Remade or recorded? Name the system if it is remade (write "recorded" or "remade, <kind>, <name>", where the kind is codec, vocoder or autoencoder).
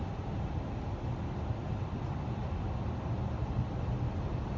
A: recorded